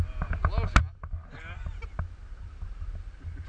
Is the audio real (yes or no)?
yes